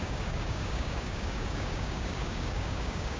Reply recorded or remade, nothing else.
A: remade